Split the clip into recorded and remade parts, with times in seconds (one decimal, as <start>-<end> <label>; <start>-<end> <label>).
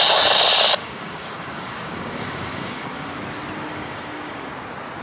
0.0-0.8 recorded; 0.8-3.1 remade; 3.1-3.7 recorded; 3.7-4.5 remade; 4.5-5.0 recorded